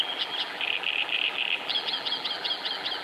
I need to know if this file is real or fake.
fake